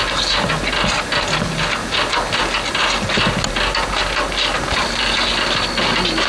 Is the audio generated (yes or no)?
no